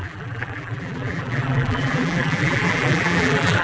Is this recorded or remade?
remade